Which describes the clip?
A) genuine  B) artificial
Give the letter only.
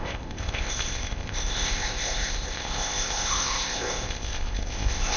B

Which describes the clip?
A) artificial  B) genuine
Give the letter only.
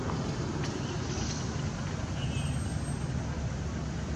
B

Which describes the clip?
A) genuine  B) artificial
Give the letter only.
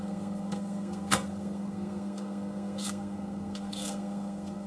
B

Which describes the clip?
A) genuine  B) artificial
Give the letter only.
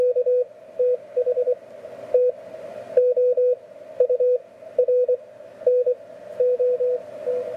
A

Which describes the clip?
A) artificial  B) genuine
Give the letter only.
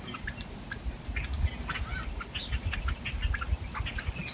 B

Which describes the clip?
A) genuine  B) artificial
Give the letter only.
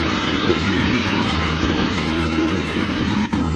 B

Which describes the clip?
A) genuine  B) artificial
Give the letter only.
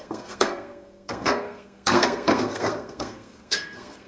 B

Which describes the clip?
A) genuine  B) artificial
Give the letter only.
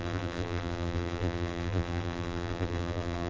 B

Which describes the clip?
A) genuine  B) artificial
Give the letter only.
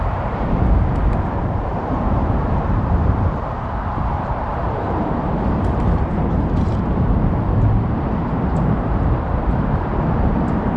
B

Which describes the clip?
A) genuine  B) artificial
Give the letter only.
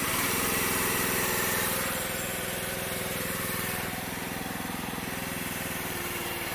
B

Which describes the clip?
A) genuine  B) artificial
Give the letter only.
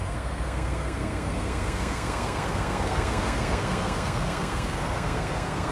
B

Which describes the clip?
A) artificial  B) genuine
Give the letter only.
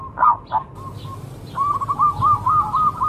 A